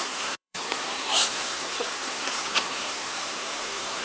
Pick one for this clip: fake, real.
fake